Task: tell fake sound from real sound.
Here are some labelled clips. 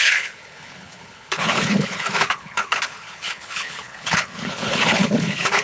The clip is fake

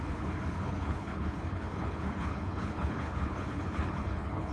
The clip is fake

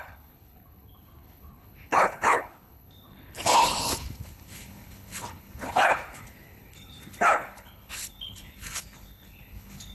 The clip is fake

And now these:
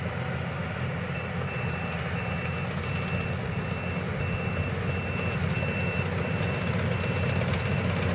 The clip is real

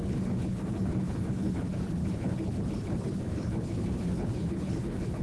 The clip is fake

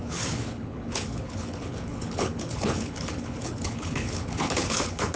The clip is fake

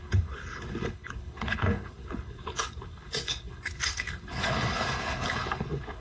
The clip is fake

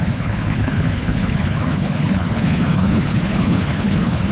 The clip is fake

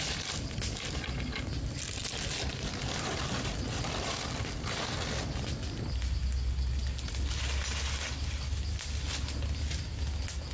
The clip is real